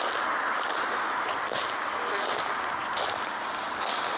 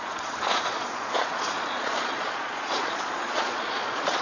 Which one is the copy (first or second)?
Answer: second